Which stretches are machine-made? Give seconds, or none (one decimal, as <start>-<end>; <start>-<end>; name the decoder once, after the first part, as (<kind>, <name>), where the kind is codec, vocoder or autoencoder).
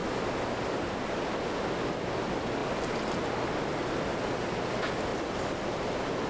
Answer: 5.1-6.3 (vocoder, BigVGAN v2)